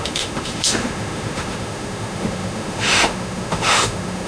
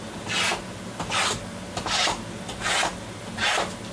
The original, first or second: second